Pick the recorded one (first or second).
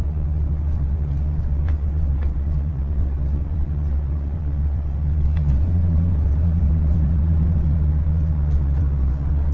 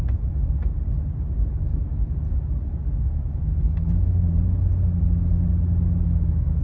second